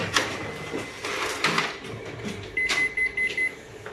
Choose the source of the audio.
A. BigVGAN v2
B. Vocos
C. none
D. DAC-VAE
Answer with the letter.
C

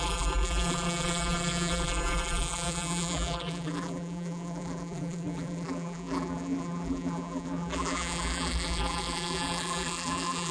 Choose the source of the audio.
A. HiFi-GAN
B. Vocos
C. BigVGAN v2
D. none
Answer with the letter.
C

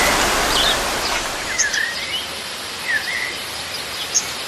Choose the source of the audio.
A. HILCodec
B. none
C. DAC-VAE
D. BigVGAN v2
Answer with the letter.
B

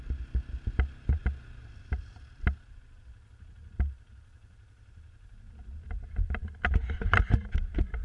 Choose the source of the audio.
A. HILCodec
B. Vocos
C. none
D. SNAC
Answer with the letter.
C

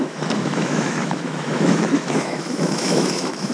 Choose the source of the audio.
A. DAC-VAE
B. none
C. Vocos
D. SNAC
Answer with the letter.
A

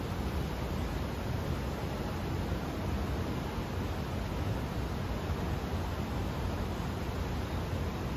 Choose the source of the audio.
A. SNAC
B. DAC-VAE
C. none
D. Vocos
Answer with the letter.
C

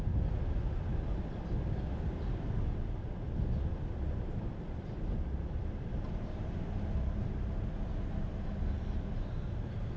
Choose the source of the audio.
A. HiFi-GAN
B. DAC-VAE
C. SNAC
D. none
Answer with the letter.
D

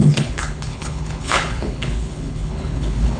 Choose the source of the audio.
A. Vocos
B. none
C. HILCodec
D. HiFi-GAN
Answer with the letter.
C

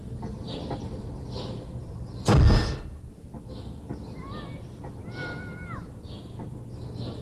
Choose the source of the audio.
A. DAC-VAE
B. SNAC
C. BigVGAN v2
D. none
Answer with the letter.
D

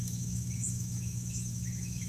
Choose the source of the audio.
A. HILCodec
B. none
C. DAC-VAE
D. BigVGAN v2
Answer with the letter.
C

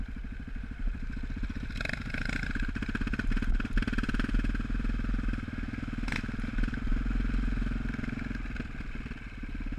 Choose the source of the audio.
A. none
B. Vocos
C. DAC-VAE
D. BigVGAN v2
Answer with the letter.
A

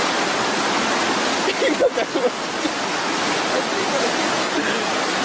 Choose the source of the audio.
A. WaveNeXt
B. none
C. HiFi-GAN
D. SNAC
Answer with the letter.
B